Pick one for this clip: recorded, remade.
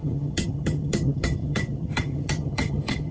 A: remade